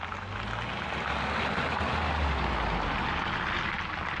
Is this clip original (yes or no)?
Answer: yes